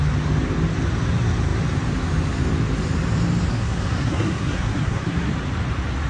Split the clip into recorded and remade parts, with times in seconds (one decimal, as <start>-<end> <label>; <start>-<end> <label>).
0.0-3.5 recorded; 3.5-5.3 remade; 5.3-6.1 recorded